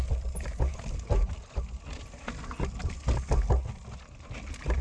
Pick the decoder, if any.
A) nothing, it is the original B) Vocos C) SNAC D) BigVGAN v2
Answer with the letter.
A